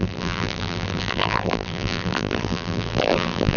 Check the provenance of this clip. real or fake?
fake